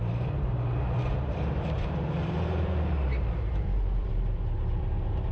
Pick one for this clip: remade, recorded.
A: remade